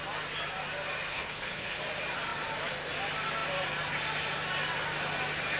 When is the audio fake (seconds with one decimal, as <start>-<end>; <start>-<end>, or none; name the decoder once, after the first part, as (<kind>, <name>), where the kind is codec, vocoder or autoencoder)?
1.1-1.8 (codec, HILCodec)